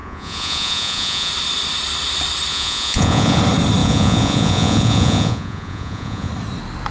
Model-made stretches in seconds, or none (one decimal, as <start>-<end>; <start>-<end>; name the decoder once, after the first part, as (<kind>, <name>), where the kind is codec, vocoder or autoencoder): 0.0-1.3 (vocoder, Vocos); 2.5-3.4; 3.8-6.3